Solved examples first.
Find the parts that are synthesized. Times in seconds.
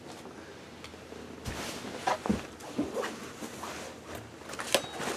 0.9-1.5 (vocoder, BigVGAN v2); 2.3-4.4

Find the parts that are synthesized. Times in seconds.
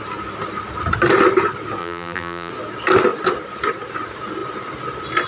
1.8-2.5 (vocoder, BigVGAN v2)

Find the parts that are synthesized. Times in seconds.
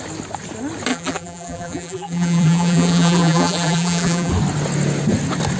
0.9-4.3 (vocoder, BigVGAN v2)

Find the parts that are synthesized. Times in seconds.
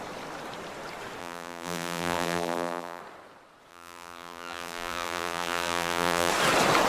1.2-3.0 (vocoder, BigVGAN v2); 3.7-6.3